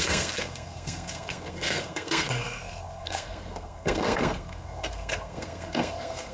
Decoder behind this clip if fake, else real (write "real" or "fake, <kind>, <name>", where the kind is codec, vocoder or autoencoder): fake, codec, SNAC